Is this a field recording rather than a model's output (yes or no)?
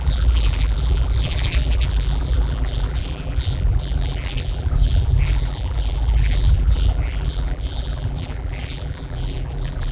no